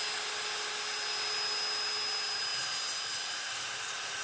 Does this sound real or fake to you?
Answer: real